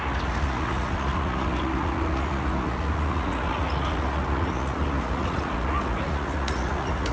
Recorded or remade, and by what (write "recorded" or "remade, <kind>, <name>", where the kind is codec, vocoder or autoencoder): remade, vocoder, Vocos